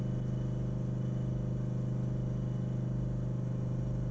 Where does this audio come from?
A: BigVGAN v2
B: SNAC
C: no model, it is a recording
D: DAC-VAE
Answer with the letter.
C